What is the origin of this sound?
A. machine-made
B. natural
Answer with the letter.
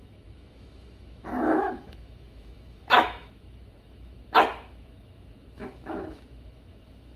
A